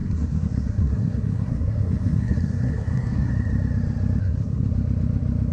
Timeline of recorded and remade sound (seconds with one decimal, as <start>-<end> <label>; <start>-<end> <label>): 0.0-3.3 remade; 3.3-4.2 recorded; 4.2-4.7 remade; 4.7-5.5 recorded